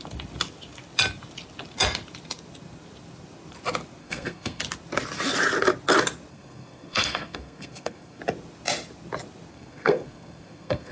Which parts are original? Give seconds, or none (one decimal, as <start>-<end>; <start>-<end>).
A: 0.0-4.0; 4.6-6.3; 8.2-9.5